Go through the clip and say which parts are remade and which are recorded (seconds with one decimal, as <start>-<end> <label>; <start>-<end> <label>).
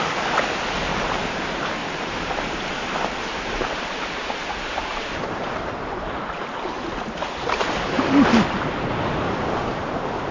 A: 0.0-0.9 recorded; 0.9-1.4 remade; 1.4-1.8 recorded; 1.8-2.7 remade; 2.7-3.2 recorded; 3.2-8.3 remade; 8.3-10.3 recorded